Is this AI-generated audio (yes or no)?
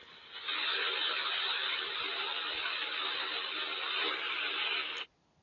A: no